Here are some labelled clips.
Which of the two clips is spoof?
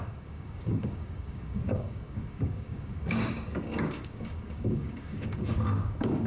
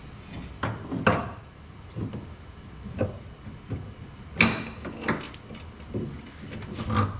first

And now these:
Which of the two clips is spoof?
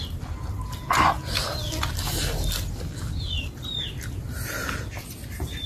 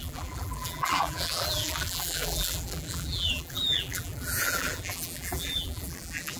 second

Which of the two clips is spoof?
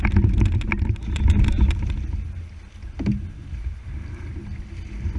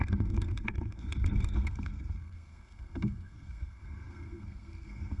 second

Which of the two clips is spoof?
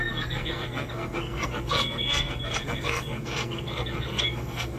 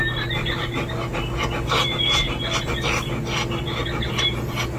first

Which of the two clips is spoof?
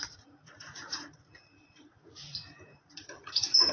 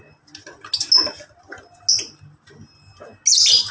first